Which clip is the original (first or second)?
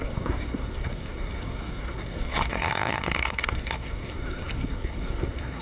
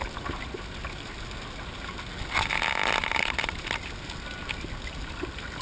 second